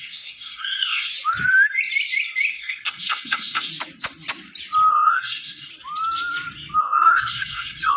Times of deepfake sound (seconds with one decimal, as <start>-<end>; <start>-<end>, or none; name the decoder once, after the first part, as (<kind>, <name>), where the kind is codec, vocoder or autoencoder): 0.0-1.1 (codec, SNAC); 2.5-3.7; 4.9-5.7; 6.8-8.0